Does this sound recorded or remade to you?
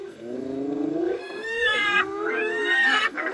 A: remade